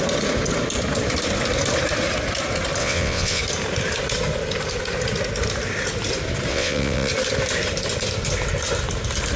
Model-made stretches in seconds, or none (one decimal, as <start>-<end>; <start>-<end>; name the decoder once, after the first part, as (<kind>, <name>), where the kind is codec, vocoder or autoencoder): 2.8-3.4 (vocoder, WaveNeXt); 6.5-7.1